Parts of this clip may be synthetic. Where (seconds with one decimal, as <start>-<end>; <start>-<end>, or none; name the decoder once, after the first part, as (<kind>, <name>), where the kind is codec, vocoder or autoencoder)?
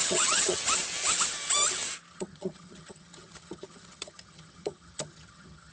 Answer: 0.0-0.6 (vocoder, HiFi-GAN); 2.1-5.7